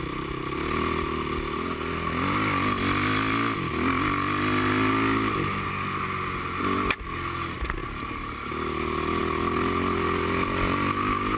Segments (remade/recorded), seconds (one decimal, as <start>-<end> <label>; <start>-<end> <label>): 0.0-11.4 recorded